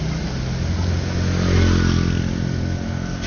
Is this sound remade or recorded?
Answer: recorded